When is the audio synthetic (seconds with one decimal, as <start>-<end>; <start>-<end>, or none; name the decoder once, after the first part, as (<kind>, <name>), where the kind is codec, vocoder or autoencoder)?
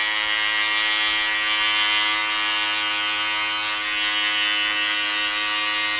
none